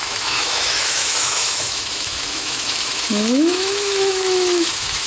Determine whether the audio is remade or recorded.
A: remade